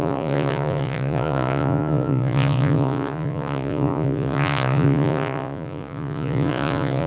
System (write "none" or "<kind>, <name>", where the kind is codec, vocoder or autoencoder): vocoder, Vocos